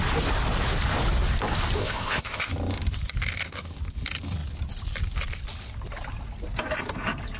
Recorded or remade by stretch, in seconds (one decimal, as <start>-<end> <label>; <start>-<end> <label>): 0.0-1.8 recorded; 1.8-2.5 remade; 2.5-7.4 recorded